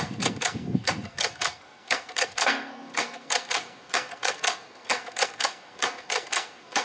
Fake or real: fake